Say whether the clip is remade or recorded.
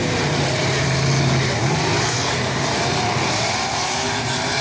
remade